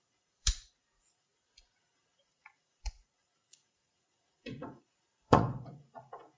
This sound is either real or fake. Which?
fake